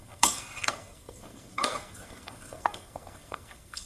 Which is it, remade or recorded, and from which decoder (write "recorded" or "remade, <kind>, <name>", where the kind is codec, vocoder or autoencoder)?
remade, codec, SNAC